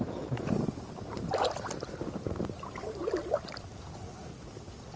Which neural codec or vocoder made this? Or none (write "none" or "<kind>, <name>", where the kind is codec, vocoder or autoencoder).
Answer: none